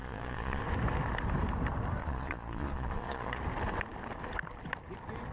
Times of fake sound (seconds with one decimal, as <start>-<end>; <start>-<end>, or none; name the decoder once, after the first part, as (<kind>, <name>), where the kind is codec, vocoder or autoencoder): 0.0-0.6 (vocoder, Vocos); 2.0-3.4